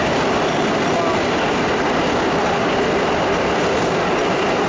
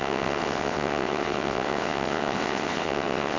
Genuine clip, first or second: first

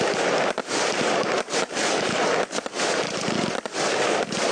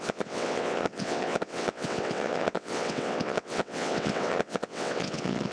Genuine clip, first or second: first